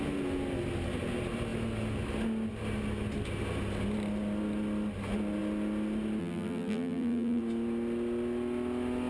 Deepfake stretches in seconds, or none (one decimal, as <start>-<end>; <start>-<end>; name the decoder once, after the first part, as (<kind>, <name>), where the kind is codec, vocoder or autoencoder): 6.2-7.4 (vocoder, BigVGAN v2)